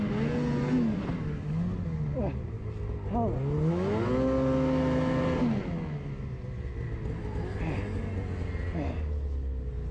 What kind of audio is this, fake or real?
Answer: real